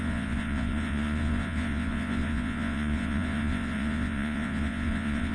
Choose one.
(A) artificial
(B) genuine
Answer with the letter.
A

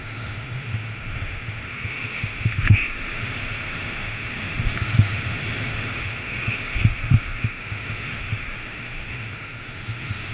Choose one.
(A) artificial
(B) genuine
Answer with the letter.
A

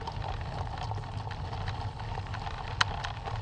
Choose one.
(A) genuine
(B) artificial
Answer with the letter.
A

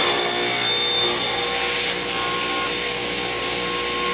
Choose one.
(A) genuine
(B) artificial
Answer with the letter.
A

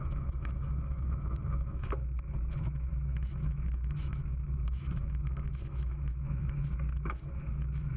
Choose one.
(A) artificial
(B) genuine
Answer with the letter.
A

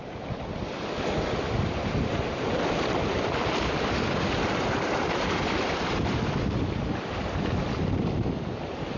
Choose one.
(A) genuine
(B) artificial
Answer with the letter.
A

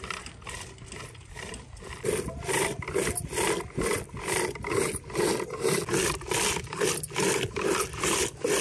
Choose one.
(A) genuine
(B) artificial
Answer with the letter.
A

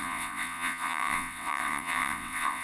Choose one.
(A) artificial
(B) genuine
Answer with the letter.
A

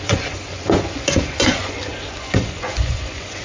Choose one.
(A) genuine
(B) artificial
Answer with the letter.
B